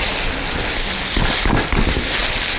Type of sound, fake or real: real